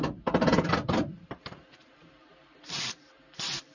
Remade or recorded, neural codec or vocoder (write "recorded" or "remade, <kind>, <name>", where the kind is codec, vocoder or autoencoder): remade, vocoder, BigVGAN v2